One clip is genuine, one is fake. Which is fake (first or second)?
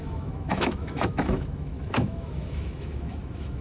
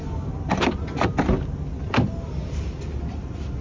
first